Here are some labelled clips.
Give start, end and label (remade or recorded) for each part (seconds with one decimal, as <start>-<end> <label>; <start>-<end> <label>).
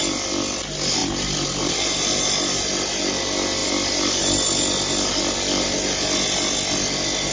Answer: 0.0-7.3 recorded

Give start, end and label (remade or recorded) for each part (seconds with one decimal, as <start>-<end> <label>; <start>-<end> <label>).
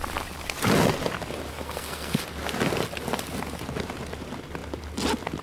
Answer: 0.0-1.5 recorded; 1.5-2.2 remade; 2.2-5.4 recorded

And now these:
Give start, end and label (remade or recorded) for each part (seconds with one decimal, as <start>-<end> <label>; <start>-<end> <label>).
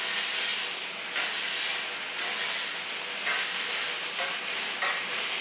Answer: 0.0-5.4 recorded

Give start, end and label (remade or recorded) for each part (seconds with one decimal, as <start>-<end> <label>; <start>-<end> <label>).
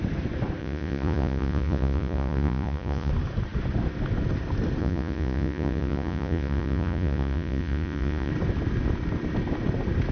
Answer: 0.0-0.6 recorded; 0.6-3.1 remade; 3.1-4.8 recorded; 4.8-8.3 remade; 8.3-10.1 recorded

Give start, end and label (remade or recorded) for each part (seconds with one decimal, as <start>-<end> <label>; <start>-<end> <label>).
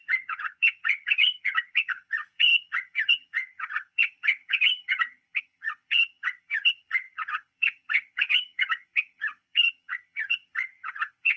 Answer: 0.0-11.4 remade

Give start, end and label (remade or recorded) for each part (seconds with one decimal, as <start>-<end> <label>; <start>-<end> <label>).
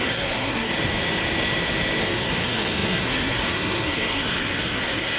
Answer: 0.0-0.7 remade; 0.7-2.0 recorded; 2.0-5.2 remade